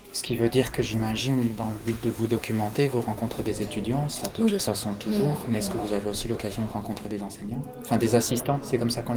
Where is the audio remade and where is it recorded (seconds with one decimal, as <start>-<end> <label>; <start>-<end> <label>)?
0.0-1.2 recorded; 1.2-3.5 remade; 3.5-4.2 recorded; 4.2-7.2 remade; 7.2-9.2 recorded